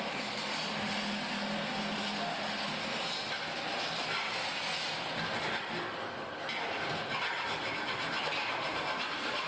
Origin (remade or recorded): recorded